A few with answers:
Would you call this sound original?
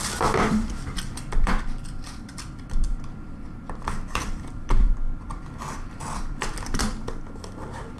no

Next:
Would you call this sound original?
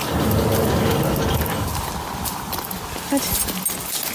yes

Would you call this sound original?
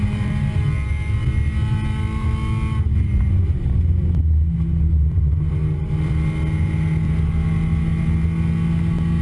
yes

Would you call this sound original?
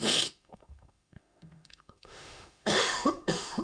no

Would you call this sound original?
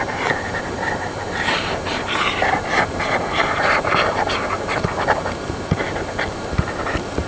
no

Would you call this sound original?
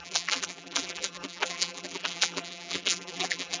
no